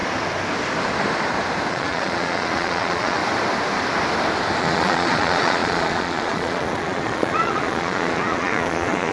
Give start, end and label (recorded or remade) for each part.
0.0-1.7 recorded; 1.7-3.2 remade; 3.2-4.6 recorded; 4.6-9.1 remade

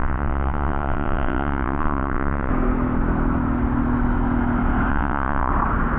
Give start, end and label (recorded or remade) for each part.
0.0-2.5 remade; 2.5-4.9 recorded; 4.9-5.5 remade; 5.5-6.0 recorded

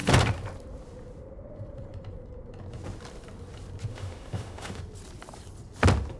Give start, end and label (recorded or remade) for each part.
0.0-3.9 recorded; 3.9-4.8 remade; 4.8-6.2 recorded